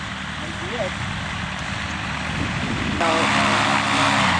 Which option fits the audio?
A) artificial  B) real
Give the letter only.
B